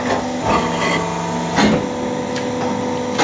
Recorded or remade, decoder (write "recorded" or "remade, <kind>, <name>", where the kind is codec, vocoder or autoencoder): recorded